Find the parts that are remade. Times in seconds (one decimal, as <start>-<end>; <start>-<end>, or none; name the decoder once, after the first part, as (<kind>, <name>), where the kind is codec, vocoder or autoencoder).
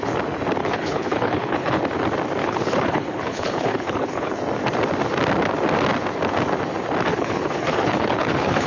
0.6-1.8 (codec, HILCodec); 2.4-4.4; 7.1-8.7